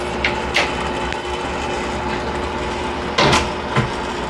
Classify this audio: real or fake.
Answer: real